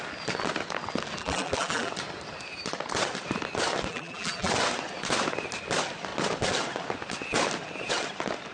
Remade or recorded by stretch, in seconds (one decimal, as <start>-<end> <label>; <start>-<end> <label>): 0.0-1.2 recorded; 1.2-1.9 remade; 1.9-3.9 recorded; 3.9-4.5 remade; 4.5-8.5 recorded